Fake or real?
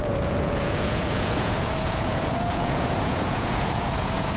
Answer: fake